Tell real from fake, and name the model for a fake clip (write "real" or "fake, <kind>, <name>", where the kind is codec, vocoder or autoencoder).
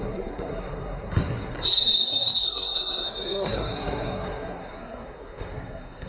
fake, codec, SNAC